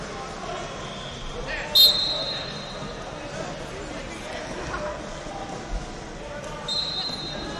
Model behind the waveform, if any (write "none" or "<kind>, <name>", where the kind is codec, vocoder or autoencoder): none